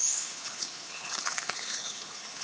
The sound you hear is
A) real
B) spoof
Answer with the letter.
B